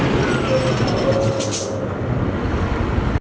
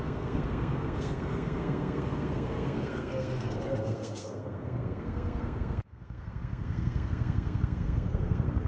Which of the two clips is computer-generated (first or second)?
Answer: second